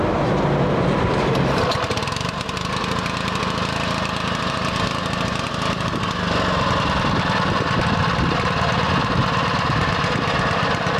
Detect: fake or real real